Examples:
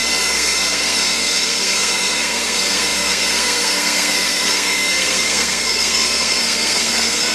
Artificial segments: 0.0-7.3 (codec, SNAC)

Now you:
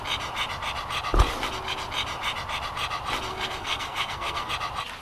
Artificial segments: 3.3-4.5 (codec, SNAC)

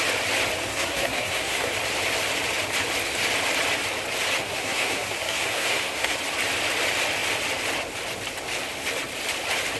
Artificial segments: 0.7-1.7 (codec, SNAC); 4.4-6.2

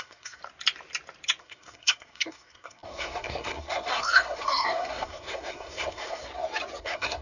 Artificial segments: 0.0-0.4 (codec, SNAC); 1.4-6.3; 6.8-7.2

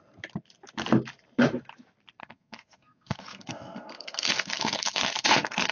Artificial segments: 2.2-5.7 (codec, SNAC)

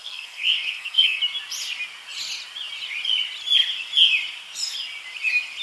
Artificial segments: 0.0-1.2 (codec, SNAC)

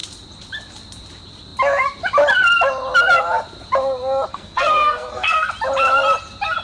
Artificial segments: 4.3-5.5 (codec, SNAC)